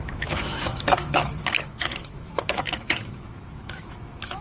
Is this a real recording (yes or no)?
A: no